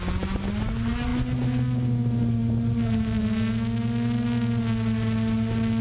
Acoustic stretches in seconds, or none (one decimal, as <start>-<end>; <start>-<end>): 0.0-5.8